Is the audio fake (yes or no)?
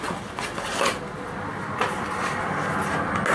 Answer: no